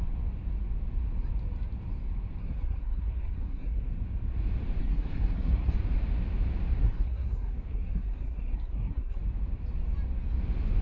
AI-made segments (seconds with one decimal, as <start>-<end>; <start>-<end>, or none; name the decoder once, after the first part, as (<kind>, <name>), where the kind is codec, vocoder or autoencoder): 2.4-3.9 (codec, SNAC); 4.8-5.7; 6.8-9.2